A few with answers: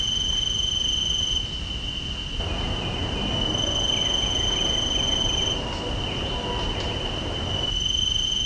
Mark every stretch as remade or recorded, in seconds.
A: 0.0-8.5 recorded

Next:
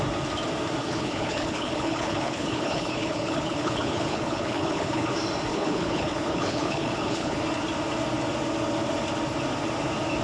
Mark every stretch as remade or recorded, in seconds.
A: 0.0-0.8 recorded; 0.8-5.1 remade; 5.1-5.5 recorded; 5.5-7.4 remade; 7.4-10.2 recorded